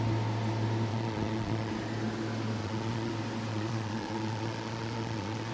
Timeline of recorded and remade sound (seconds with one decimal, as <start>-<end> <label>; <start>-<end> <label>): 0.0-0.9 recorded; 0.9-1.7 remade; 1.7-2.6 recorded; 2.6-3.1 remade; 3.1-3.5 recorded; 3.5-5.5 remade